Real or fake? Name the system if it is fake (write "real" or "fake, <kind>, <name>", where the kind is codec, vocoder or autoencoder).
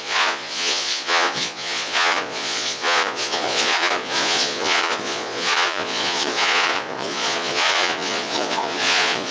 fake, vocoder, Vocos